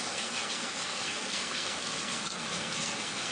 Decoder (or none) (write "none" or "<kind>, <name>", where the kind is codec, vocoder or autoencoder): codec, SNAC